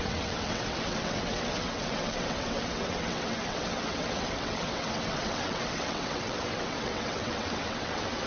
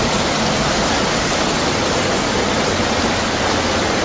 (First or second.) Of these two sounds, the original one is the second